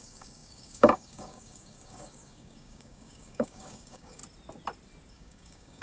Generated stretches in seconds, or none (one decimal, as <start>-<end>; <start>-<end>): 0.0-4.2; 5.1-5.8